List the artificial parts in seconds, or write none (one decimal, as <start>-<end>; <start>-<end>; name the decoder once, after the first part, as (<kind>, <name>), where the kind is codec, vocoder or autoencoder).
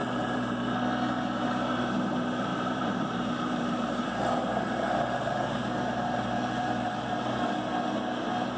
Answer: 0.0-0.6 (vocoder, BigVGAN v2); 2.5-6.9